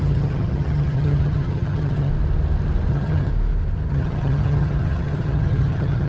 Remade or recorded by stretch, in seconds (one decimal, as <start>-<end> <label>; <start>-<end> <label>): 0.0-2.1 remade; 2.1-2.9 recorded; 2.9-3.3 remade; 3.3-3.9 recorded; 3.9-6.1 remade